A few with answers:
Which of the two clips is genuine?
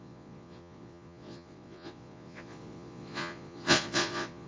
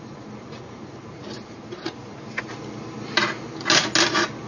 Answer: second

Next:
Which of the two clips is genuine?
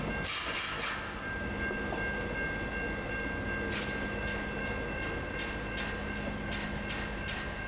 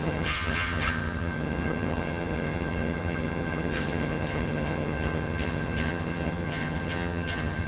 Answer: first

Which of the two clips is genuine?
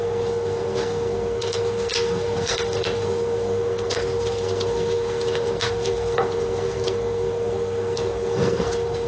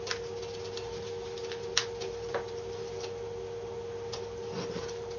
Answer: second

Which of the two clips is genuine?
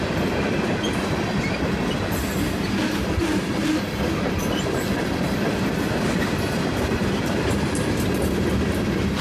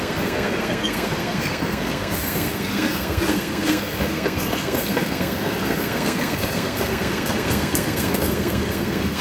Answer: first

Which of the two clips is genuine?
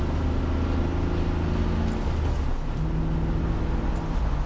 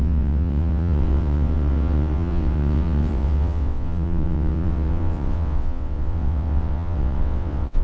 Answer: first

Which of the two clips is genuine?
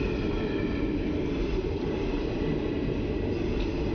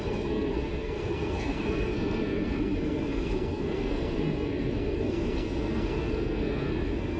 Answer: first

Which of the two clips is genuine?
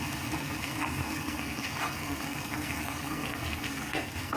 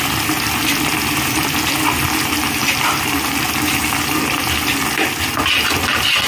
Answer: second